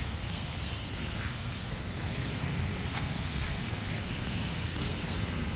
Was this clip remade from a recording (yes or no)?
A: yes